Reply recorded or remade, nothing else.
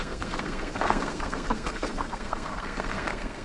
remade